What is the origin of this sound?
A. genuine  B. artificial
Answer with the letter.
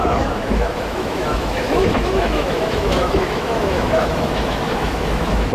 B